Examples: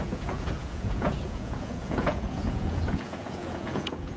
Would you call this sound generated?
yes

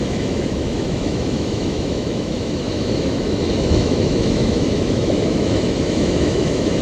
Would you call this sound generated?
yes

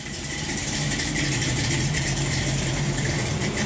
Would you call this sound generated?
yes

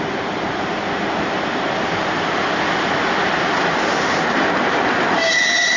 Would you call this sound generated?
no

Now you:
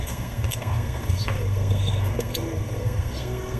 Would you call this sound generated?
yes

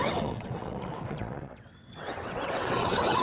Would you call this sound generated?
yes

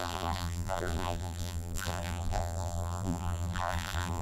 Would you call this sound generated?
yes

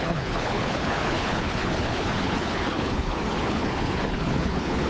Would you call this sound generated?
yes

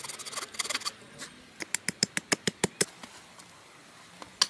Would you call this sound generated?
no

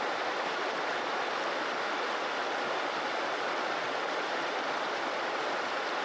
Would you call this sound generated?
no